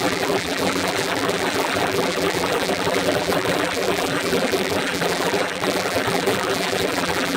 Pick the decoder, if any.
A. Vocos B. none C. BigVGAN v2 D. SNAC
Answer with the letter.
C